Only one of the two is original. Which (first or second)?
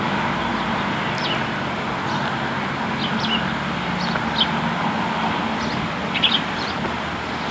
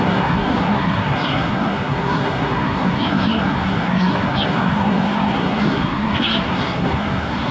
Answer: first